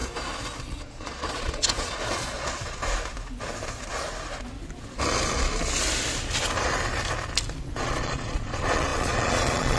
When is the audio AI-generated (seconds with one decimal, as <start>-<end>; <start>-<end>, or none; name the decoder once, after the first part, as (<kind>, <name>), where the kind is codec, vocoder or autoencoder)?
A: 0.6-2.8 (vocoder, Vocos); 7.6-9.8